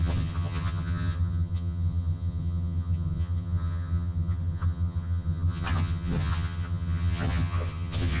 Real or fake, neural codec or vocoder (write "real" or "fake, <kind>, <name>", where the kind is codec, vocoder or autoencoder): fake, vocoder, HiFi-GAN